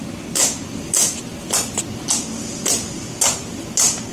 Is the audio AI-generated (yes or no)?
no